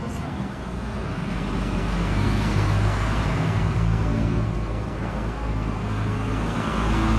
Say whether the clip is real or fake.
fake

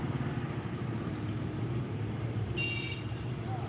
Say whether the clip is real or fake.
real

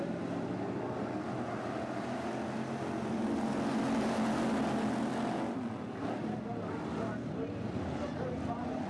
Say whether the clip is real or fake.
real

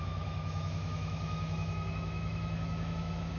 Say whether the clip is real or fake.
fake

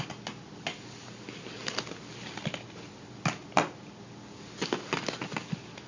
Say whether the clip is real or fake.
real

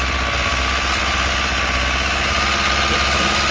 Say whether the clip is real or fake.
real